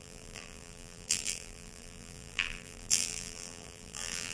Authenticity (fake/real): fake